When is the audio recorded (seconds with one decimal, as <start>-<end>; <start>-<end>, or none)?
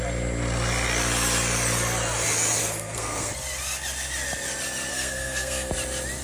0.0-2.6; 3.3-4.9; 5.7-6.2